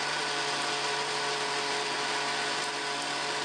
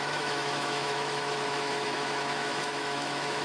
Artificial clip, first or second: second